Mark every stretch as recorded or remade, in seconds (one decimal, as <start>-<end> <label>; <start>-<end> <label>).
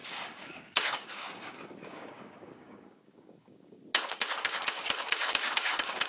0.0-3.8 remade; 3.8-4.4 recorded; 4.4-6.1 remade